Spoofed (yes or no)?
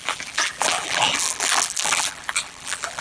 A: yes